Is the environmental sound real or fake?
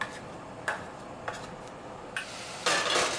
real